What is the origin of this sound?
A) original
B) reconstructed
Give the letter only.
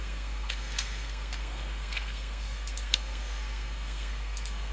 B